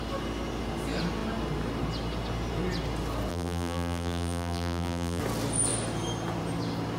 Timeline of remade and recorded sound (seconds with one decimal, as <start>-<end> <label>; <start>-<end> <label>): 0.0-3.3 recorded; 3.3-5.2 remade; 5.2-7.0 recorded